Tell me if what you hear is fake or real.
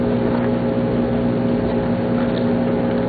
real